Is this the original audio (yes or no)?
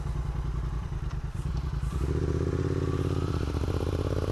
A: no